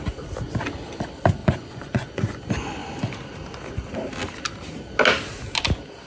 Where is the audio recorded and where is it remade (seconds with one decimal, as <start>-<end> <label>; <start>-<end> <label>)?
0.0-1.4 recorded; 1.4-2.4 remade; 2.4-6.1 recorded